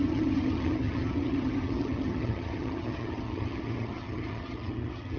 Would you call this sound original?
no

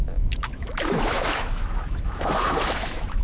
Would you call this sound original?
no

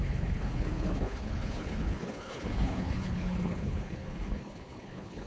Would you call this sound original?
no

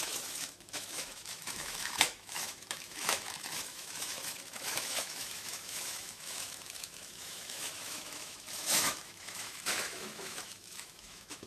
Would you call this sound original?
no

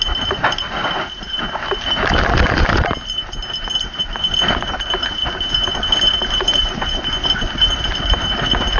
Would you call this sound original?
yes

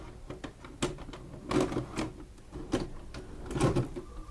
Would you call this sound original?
yes